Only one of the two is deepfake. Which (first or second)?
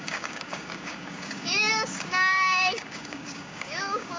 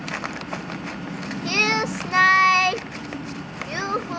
first